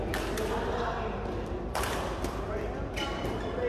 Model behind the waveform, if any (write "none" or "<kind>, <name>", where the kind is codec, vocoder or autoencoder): none